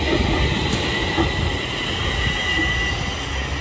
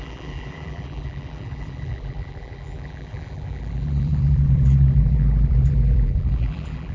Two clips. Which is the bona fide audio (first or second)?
first